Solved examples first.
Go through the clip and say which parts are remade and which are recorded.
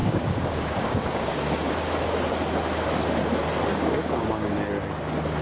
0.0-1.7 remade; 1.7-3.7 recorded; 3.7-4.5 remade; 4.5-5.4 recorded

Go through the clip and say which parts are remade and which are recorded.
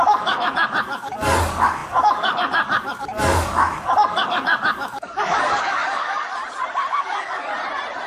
0.0-6.4 remade; 6.4-6.9 recorded; 6.9-7.5 remade; 7.5-8.1 recorded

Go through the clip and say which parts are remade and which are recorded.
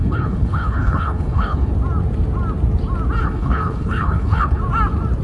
0.0-1.7 remade; 1.7-3.2 recorded; 3.2-4.6 remade; 4.6-5.2 recorded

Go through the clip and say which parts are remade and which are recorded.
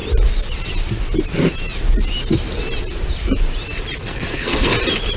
0.0-4.0 recorded; 4.0-4.7 remade; 4.7-5.2 recorded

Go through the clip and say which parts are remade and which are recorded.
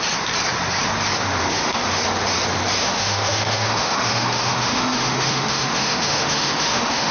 0.0-1.4 recorded; 1.4-2.0 remade; 2.0-2.8 recorded; 2.8-7.1 remade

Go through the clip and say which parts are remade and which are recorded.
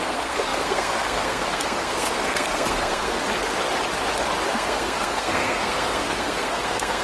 0.0-3.2 remade; 3.2-4.5 recorded; 4.5-7.0 remade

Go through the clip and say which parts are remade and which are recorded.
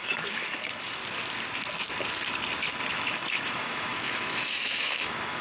0.0-1.0 remade; 1.0-2.9 recorded; 2.9-5.4 remade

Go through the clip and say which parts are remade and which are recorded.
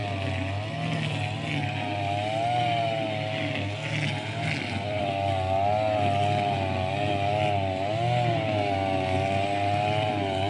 0.0-10.5 recorded